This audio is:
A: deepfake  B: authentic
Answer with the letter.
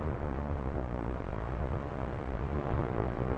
A